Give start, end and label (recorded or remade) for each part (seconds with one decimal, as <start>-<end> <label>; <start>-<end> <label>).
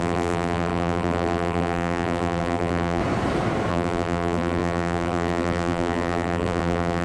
0.0-3.0 remade; 3.0-3.7 recorded; 3.7-7.0 remade